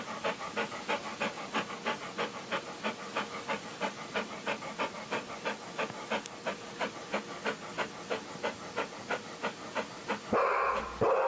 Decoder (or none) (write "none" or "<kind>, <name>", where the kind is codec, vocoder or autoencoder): none